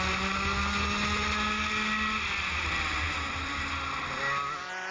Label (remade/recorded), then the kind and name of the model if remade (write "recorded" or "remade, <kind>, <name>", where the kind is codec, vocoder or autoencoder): recorded